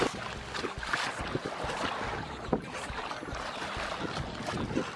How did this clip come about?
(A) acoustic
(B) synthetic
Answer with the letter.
A